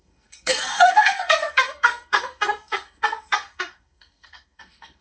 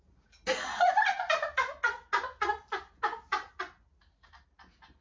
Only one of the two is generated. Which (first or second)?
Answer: first